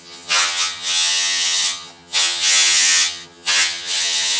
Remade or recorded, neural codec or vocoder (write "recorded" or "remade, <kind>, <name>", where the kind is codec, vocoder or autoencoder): remade, vocoder, HiFi-GAN